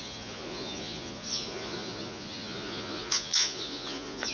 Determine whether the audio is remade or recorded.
remade